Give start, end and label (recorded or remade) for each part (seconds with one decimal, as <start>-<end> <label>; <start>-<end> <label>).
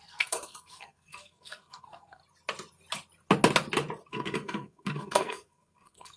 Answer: 0.0-2.2 remade; 2.2-4.1 recorded; 4.1-6.2 remade